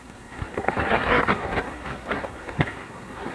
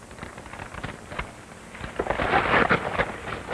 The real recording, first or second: second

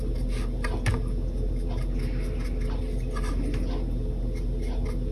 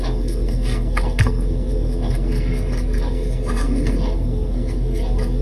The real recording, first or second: first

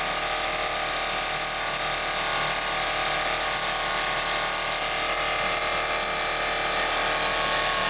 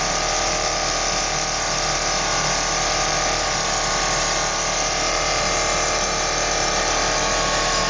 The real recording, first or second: first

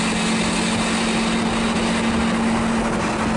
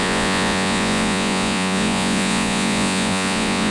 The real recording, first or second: first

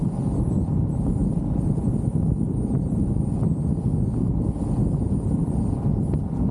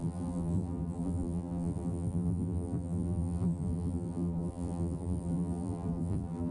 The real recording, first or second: first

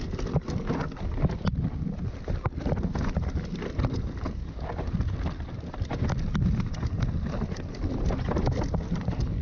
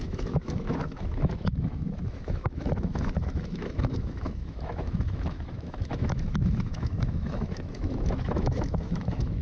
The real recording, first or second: first